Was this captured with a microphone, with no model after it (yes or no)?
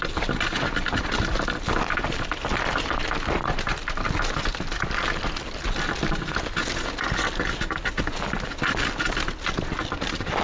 yes